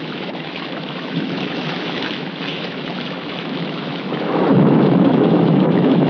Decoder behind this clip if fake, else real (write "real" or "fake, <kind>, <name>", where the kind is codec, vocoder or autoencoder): fake, autoencoder, DAC-VAE